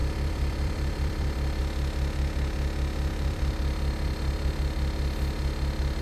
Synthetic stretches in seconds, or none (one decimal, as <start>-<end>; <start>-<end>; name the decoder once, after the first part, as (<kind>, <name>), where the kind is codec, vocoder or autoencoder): 0.0-1.6 (vocoder, BigVGAN v2); 3.1-4.5